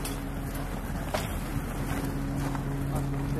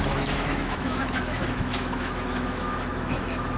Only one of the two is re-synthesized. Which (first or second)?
second